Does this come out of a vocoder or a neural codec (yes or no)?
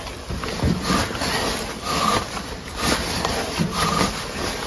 no